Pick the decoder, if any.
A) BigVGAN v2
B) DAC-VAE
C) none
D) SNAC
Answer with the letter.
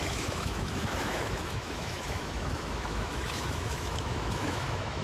B